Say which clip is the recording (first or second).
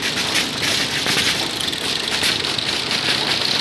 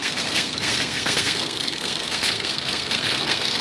first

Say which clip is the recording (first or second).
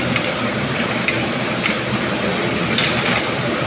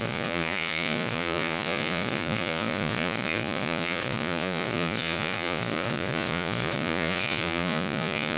first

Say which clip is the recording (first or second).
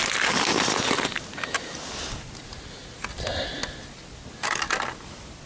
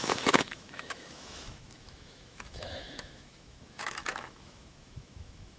first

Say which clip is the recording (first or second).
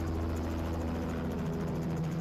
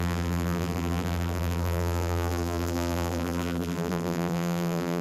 first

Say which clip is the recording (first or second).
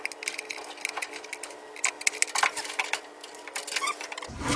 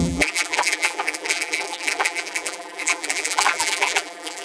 first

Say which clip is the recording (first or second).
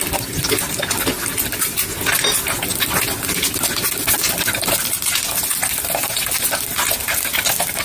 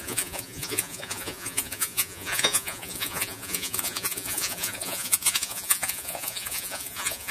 first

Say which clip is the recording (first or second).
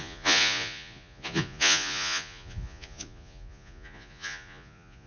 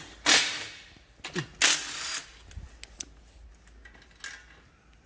second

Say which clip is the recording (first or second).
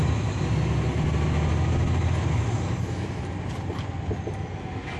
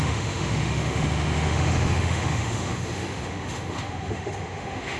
first